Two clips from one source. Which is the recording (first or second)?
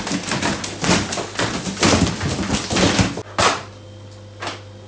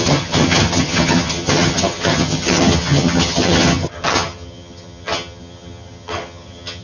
first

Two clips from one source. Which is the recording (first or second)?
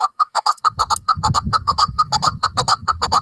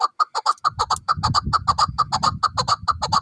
second